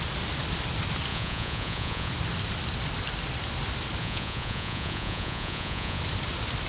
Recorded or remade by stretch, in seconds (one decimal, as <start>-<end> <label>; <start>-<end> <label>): 0.0-1.1 recorded; 1.1-2.1 remade; 2.1-4.0 recorded; 4.0-6.0 remade; 6.0-6.7 recorded